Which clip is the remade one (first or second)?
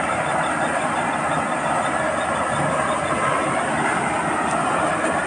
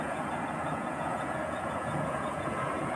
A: second